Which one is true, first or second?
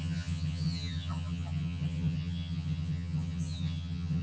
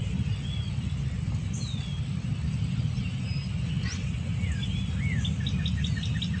second